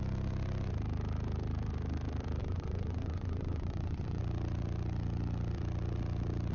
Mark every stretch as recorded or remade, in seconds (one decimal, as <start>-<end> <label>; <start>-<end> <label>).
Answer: 0.0-2.4 recorded; 2.4-4.2 remade; 4.2-6.5 recorded